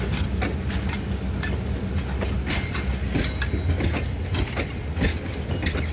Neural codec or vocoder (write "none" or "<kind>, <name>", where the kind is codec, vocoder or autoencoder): none